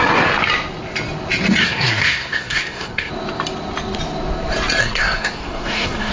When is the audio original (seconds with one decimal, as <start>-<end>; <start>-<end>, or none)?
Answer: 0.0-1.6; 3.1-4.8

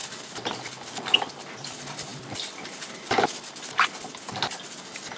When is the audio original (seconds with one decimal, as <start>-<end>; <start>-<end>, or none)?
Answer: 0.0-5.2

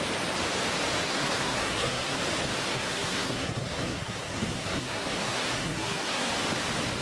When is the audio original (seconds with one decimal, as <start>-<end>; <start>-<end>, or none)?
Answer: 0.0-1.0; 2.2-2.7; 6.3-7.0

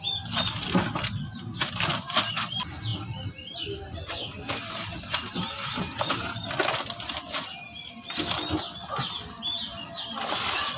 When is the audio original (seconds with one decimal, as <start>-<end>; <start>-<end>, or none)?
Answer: 0.0-10.8

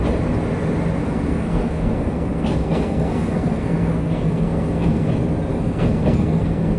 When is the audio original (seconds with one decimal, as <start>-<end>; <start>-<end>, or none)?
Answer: 0.0-1.0; 5.1-5.5

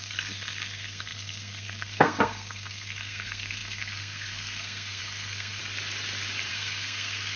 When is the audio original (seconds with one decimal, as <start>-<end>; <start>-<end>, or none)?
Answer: 5.6-6.5

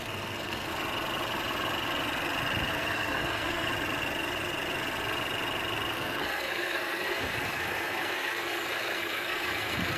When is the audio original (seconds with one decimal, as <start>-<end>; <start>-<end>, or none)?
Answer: 0.7-2.7; 3.7-5.9